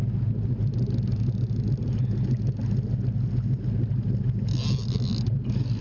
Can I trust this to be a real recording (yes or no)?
yes